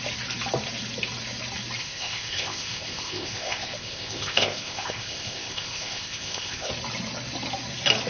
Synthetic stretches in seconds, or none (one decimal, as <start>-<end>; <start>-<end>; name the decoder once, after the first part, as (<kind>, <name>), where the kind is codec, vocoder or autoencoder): 1.8-6.7 (codec, ZipCodec)